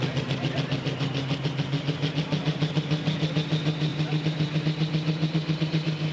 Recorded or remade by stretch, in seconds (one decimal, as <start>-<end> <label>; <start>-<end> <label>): 0.0-3.9 recorded; 3.9-4.6 remade; 4.6-6.1 recorded